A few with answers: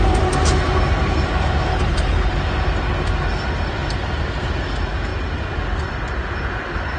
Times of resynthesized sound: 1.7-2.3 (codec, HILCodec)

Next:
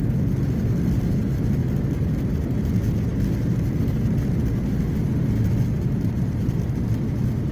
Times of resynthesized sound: none

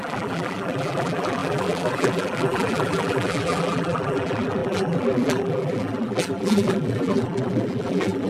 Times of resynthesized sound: 0.0-8.3 (vocoder, BigVGAN v2)

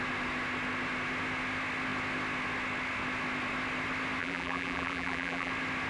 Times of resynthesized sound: 4.2-5.5 (vocoder, BigVGAN v2)

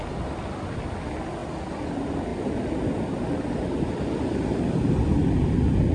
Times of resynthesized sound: none